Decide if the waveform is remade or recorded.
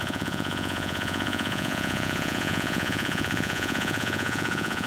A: remade